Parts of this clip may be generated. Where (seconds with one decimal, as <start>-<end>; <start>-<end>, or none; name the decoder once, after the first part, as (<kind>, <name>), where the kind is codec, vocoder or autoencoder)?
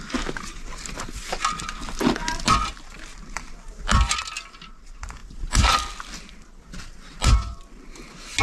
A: none